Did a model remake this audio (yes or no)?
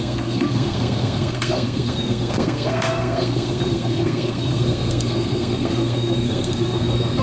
yes